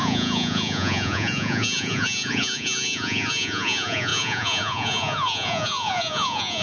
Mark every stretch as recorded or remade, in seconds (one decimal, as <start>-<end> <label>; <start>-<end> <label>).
0.0-6.6 remade